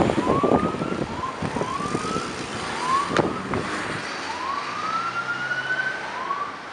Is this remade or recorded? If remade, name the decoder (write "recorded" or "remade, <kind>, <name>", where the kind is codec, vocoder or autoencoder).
recorded